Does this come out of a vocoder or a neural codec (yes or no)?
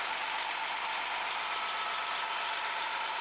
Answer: no